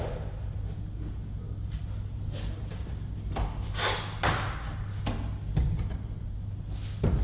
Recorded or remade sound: recorded